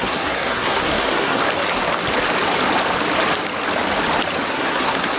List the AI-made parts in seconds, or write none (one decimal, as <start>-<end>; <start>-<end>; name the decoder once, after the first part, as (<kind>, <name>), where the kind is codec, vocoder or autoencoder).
0.0-1.4 (codec, SNAC); 4.5-5.2